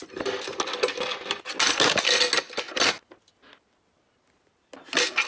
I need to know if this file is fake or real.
real